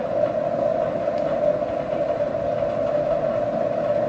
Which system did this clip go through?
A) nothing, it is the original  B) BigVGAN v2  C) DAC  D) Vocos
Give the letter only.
A